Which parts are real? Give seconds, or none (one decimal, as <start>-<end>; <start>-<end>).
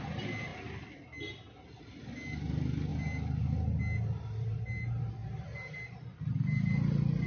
0.0-7.3